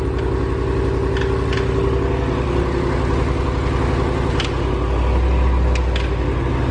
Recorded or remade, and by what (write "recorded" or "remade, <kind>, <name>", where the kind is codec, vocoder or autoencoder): recorded